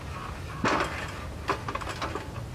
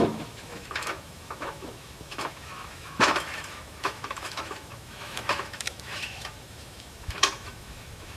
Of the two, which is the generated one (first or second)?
second